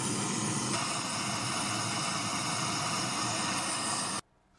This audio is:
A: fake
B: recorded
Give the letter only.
B